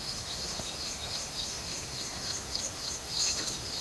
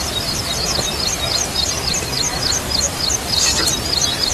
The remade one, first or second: first